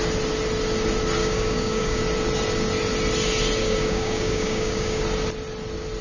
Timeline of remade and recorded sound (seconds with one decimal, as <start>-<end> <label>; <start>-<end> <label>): 0.0-1.2 recorded; 1.2-2.0 remade; 2.0-3.6 recorded; 3.6-5.0 remade; 5.0-6.0 recorded